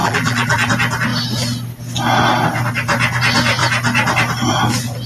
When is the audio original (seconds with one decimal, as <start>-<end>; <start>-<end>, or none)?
0.7-5.1